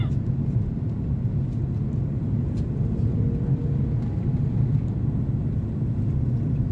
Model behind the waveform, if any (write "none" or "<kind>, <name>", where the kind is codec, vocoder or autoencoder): none